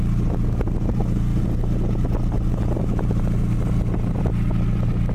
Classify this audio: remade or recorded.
recorded